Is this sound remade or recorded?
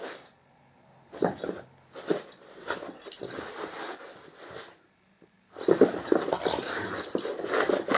recorded